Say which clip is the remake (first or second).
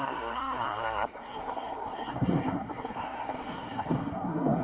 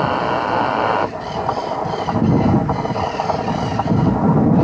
first